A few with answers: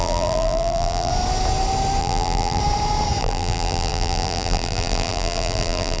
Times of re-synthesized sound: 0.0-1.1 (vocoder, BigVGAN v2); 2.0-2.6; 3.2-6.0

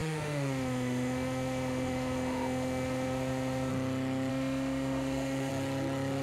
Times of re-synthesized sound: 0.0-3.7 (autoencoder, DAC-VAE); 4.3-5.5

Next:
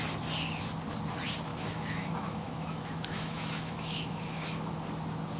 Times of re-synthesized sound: 1.5-4.7 (autoencoder, DAC-VAE)

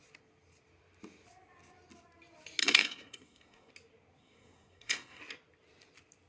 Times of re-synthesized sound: 2.6-3.7 (codec, SNAC); 4.2-5.2

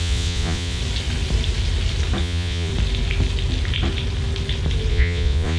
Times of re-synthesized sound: 0.0-0.8 (vocoder, Vocos); 2.2-2.7; 4.9-5.6